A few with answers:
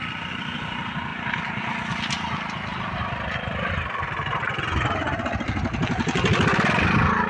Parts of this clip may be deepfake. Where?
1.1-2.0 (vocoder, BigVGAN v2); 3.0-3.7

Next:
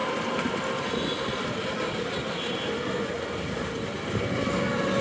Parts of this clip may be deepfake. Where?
none

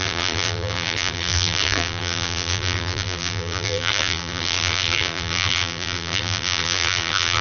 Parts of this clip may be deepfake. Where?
0.0-7.4 (vocoder, BigVGAN v2)

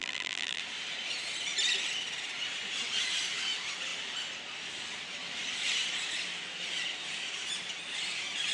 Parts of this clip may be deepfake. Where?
0.0-0.6 (vocoder, BigVGAN v2)

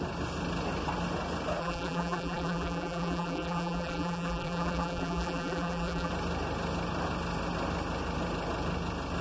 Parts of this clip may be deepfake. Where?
1.6-6.1 (vocoder, BigVGAN v2)

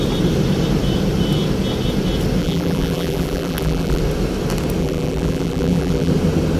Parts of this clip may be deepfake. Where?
2.4-4.0 (vocoder, BigVGAN v2); 4.8-6.1

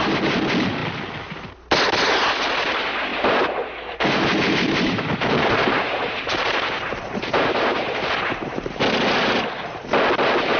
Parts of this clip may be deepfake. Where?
3.1-8.1 (vocoder, BigVGAN v2)